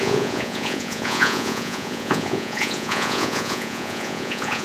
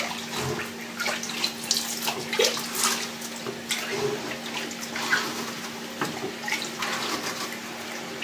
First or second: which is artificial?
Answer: first